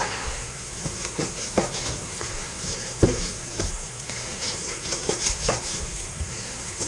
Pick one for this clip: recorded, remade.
remade